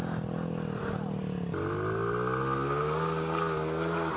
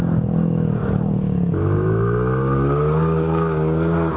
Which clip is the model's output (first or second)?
second